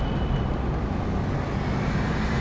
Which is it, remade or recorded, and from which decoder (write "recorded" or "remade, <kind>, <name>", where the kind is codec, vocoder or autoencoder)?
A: recorded